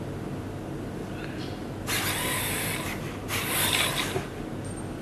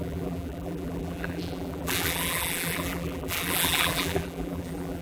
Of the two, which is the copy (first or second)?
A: second